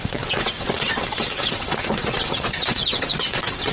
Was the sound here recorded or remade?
remade